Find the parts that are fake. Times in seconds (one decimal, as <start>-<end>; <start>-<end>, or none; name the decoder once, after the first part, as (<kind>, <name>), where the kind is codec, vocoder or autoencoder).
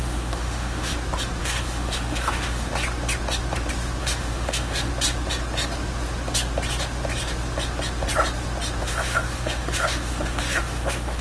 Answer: 0.0-0.9 (autoencoder, DAC-VAE); 1.4-2.7; 4.0-4.9; 8.8-11.2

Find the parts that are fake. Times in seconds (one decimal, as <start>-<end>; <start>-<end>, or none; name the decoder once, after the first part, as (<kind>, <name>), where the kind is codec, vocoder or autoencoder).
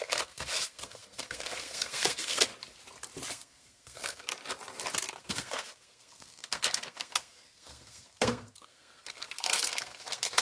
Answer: 0.0-2.5 (codec, SNAC); 3.3-4.3; 5.2-10.4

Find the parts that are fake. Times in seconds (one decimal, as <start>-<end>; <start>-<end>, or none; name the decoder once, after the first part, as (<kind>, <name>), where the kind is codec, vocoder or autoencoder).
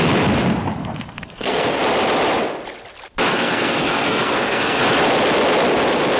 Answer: 0.8-1.8 (codec, SNAC); 3.3-4.8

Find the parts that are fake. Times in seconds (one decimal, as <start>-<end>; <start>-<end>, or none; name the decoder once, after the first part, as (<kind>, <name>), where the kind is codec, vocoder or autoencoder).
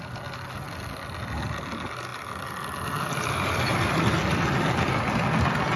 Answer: none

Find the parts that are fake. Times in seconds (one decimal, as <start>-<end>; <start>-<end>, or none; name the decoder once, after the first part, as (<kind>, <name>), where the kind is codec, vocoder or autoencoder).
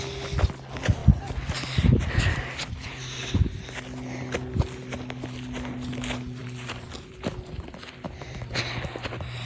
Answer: 6.4-8.6 (vocoder, BigVGAN v2)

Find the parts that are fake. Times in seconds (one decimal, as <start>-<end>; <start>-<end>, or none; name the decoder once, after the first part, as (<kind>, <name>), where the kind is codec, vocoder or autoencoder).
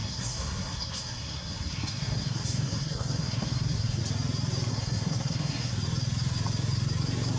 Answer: 0.0-4.0 (codec, SNAC); 4.7-5.7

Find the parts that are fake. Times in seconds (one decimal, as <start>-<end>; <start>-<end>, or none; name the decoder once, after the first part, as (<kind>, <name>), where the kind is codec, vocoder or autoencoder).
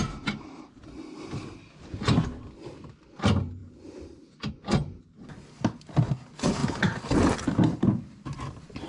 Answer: none